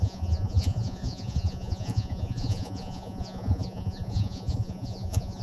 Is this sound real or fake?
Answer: fake